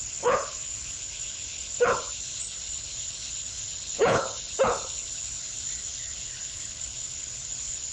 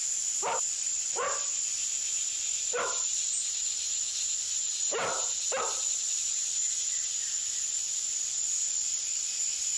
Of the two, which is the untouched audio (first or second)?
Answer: second